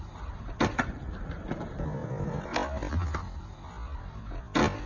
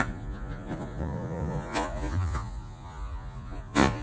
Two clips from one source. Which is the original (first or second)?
first